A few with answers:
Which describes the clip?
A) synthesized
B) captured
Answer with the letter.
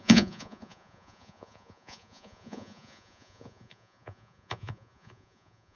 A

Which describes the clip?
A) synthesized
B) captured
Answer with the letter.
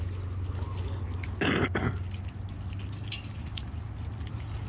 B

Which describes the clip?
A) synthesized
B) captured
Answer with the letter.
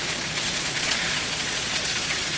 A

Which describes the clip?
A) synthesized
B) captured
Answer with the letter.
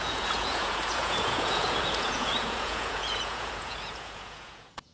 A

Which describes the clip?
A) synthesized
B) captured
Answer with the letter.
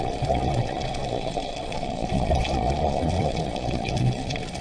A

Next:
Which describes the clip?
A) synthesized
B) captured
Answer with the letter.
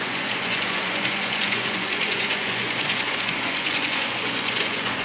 A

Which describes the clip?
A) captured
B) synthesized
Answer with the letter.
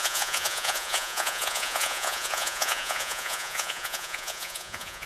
B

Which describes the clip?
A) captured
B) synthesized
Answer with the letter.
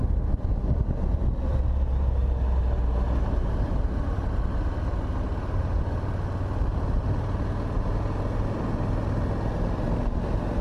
A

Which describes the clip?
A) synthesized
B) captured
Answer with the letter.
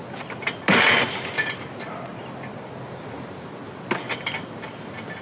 B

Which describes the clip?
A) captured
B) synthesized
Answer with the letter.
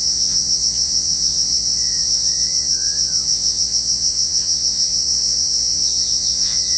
B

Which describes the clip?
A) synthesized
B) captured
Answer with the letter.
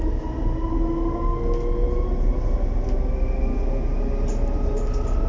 B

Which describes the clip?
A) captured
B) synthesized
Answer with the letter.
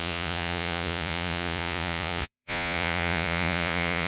B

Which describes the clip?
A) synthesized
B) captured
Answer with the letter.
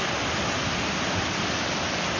B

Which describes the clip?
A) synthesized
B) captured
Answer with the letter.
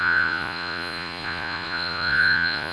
A